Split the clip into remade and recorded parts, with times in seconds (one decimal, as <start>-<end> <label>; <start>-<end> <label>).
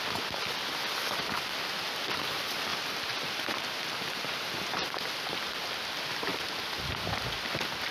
0.0-6.3 recorded; 6.3-6.9 remade; 6.9-7.9 recorded